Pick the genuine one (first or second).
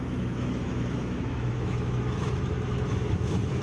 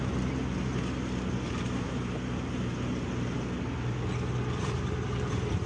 second